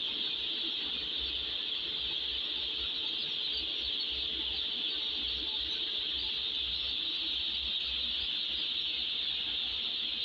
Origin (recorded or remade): recorded